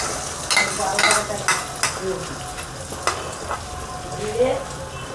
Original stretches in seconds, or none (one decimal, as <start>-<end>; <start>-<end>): 0.0-5.1